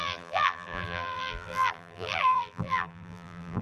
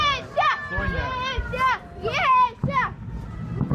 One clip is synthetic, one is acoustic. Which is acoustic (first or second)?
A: second